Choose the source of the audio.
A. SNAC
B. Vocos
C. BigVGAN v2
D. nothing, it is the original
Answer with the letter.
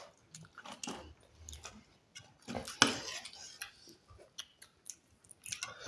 D